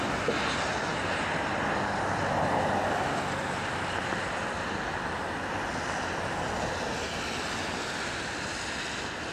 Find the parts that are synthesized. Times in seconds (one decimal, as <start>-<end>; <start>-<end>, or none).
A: none